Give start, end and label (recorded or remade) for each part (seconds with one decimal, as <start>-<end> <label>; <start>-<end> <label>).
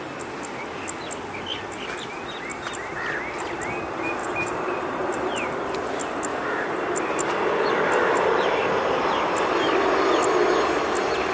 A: 0.0-4.2 recorded; 4.2-5.5 remade; 5.5-6.3 recorded; 6.3-7.0 remade; 7.0-11.3 recorded